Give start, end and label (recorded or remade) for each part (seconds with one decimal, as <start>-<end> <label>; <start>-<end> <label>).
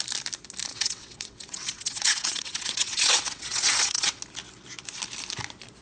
0.0-0.7 recorded; 0.7-4.2 remade; 4.2-5.8 recorded